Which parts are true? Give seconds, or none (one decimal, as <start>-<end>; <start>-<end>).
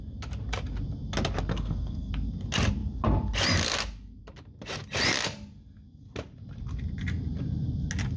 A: 0.0-1.5; 2.1-8.2